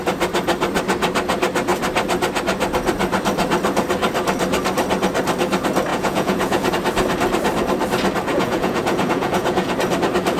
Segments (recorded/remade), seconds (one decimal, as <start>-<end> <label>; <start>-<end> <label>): 0.0-5.9 recorded; 5.9-6.7 remade; 6.7-8.3 recorded; 8.3-9.7 remade; 9.7-10.4 recorded